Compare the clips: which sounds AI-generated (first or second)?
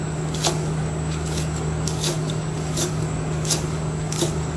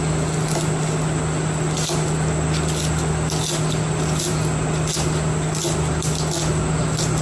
first